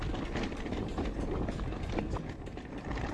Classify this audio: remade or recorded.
recorded